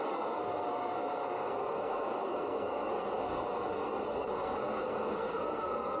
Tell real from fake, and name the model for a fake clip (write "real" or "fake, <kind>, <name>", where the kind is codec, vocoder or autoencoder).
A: fake, codec, SNAC